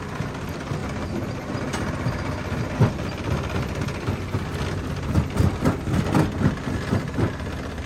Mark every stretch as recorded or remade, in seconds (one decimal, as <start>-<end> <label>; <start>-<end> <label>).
0.0-7.9 recorded